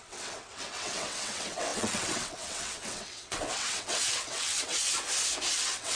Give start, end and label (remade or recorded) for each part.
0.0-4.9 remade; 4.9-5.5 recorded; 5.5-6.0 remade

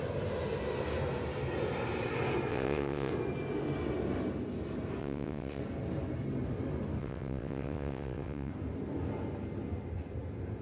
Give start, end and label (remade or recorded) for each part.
0.0-2.5 recorded; 2.5-3.1 remade; 3.1-5.0 recorded; 5.0-5.6 remade; 5.6-7.0 recorded; 7.0-8.5 remade; 8.5-10.6 recorded

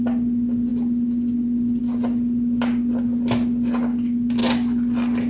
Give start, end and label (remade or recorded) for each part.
0.0-5.3 recorded

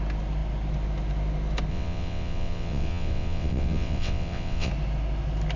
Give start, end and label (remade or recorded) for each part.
0.0-1.7 recorded; 1.7-4.7 remade; 4.7-5.6 recorded

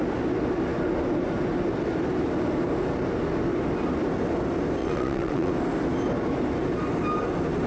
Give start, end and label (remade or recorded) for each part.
0.0-4.8 recorded; 4.8-5.5 remade; 5.5-7.7 recorded

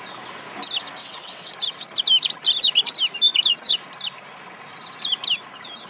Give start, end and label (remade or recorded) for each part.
0.0-1.0 recorded; 1.0-1.5 remade; 1.5-5.9 recorded